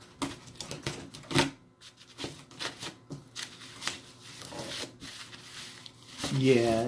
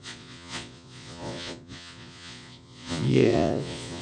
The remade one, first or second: second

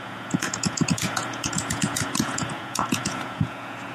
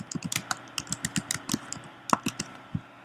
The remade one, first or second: first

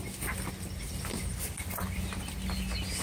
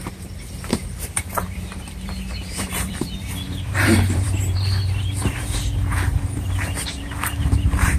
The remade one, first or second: second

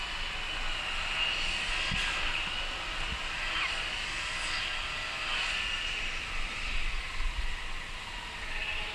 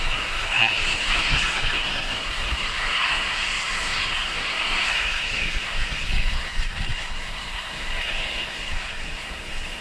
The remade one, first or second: second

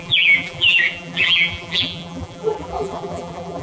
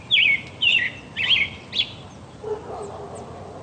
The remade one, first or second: first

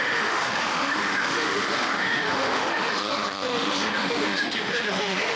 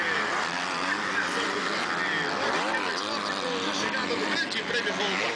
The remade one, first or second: first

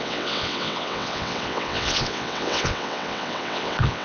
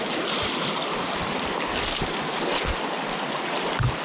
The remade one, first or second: first